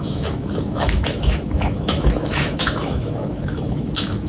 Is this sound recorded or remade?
remade